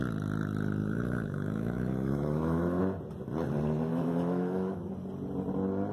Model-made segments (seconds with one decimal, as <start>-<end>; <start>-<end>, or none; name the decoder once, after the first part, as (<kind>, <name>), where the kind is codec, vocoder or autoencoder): 0.8-2.8 (autoencoder, DAC-VAE); 3.9-4.9